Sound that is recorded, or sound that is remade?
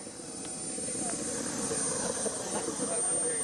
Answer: recorded